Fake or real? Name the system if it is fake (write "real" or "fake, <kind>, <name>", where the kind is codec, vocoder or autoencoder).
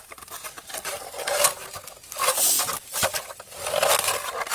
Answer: real